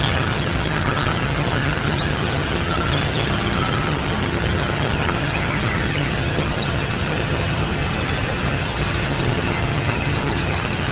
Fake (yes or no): yes